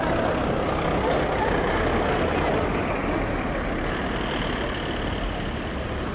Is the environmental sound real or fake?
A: real